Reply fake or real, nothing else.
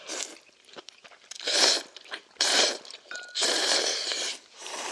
fake